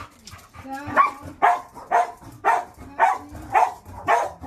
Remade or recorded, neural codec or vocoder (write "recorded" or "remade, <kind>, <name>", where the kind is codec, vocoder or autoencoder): recorded